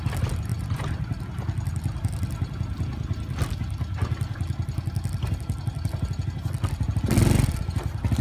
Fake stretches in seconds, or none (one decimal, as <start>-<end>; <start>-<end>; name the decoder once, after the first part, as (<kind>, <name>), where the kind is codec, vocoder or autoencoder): 0.5-1.2 (vocoder, BigVGAN v2)